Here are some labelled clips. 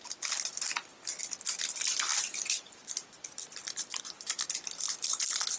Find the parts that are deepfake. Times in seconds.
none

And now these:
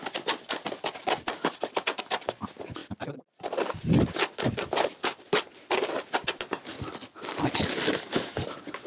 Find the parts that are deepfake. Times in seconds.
none